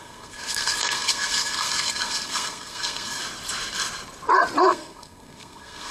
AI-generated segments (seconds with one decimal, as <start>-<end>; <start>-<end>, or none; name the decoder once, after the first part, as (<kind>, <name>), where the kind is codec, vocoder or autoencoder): 0.0-3.2 (codec, SNAC); 4.6-5.9